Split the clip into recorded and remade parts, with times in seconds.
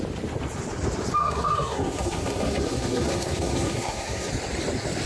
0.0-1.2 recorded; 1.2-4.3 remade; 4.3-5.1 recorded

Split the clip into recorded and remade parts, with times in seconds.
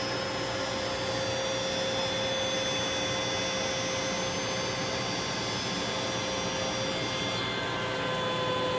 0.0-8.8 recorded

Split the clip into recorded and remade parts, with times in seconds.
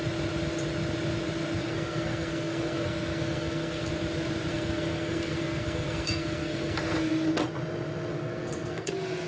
0.0-1.6 recorded; 1.6-3.9 remade; 3.9-4.5 recorded; 4.5-7.1 remade; 7.1-8.1 recorded; 8.1-8.9 remade; 8.9-9.3 recorded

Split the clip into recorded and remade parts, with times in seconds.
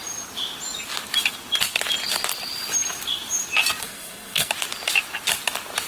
0.0-3.8 recorded; 3.8-4.5 remade; 4.5-5.9 recorded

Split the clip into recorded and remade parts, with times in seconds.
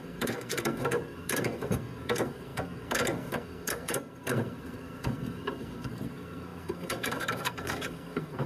0.0-8.5 remade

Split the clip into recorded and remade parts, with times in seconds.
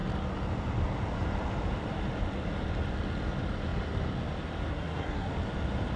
0.0-4.7 recorded; 4.7-5.3 remade; 5.3-6.0 recorded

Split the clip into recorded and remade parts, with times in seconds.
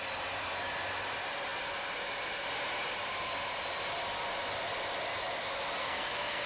0.0-5.8 recorded; 5.8-6.5 remade